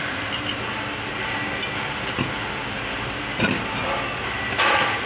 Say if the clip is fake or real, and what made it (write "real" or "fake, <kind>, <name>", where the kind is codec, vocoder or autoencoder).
real